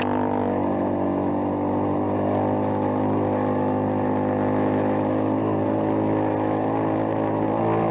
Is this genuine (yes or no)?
yes